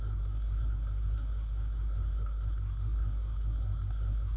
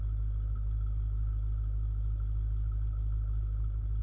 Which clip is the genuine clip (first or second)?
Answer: second